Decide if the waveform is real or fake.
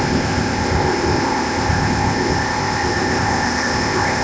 fake